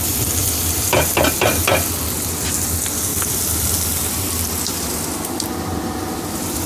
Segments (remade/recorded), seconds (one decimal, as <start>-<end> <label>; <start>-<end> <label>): 0.0-6.7 recorded